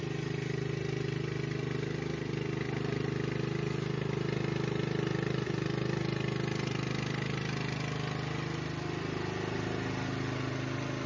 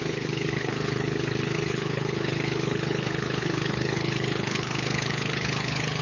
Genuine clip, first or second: first